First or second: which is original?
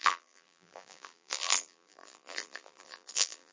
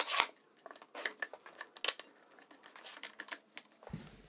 second